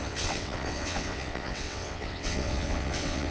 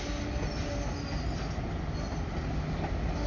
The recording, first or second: second